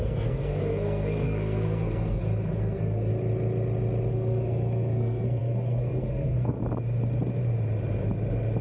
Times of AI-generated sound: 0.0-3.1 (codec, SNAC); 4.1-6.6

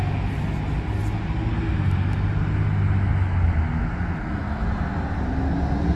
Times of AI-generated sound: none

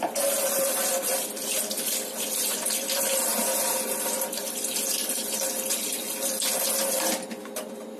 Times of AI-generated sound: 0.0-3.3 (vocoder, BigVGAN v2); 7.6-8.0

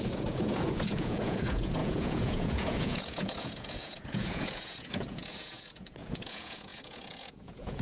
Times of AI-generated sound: 0.0-7.8 (vocoder, Vocos)

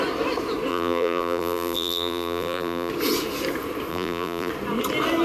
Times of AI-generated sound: 0.7-2.9 (vocoder, BigVGAN v2); 3.9-4.5